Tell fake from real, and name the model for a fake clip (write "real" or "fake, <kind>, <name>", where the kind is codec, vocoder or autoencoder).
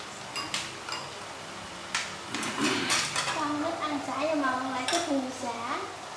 real